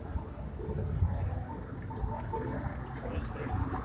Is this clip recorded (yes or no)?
yes